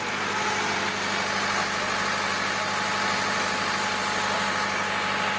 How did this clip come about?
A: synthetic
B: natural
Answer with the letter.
B